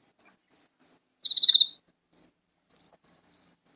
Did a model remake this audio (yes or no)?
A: no